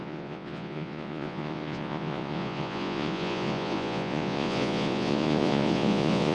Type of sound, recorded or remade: remade